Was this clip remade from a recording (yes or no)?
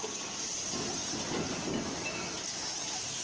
no